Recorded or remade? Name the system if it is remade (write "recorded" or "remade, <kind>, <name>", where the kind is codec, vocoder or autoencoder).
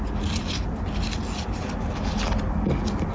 recorded